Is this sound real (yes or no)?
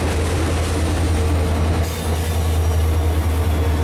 yes